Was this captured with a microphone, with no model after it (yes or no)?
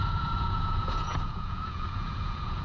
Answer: no